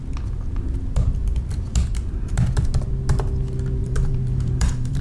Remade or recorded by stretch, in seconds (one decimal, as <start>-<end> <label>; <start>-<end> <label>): 0.0-3.8 recorded; 3.8-5.0 remade